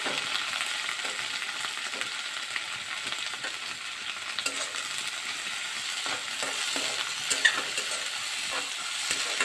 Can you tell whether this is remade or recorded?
recorded